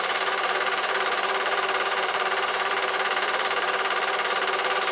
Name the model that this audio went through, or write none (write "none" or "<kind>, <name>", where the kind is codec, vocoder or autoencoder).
vocoder, BigVGAN v2